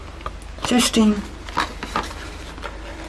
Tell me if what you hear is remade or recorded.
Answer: recorded